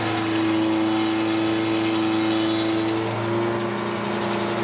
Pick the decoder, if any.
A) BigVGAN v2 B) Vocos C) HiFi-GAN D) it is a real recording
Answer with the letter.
D